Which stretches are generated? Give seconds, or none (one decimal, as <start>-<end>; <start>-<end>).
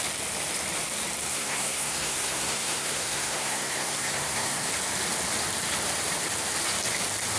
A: 1.3-4.7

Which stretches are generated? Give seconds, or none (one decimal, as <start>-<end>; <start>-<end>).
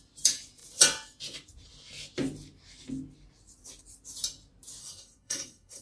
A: 4.8-5.8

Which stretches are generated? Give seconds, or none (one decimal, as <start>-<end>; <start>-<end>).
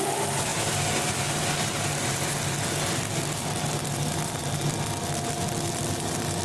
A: none